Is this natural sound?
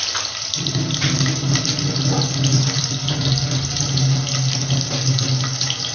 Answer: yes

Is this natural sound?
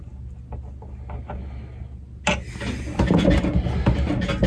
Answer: yes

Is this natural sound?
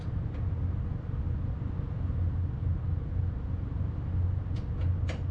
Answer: yes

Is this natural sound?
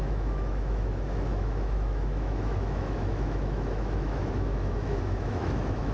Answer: no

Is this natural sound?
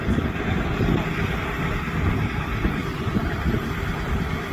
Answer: yes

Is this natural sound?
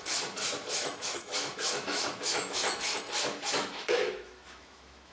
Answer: no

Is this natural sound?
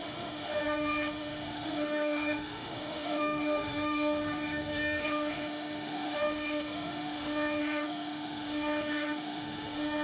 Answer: no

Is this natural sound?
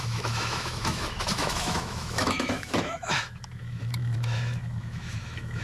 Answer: no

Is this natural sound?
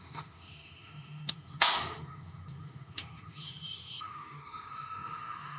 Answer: no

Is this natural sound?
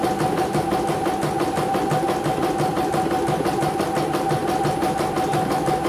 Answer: yes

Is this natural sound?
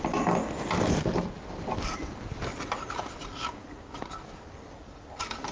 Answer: yes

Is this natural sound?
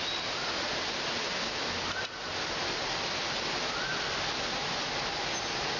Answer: yes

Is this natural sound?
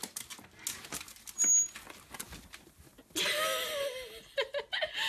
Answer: yes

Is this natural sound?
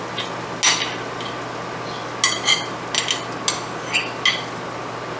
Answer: yes